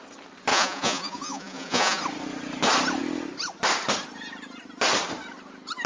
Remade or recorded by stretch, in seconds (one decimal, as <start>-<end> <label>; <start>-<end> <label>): 0.0-0.5 recorded; 0.5-2.0 remade; 2.0-5.9 recorded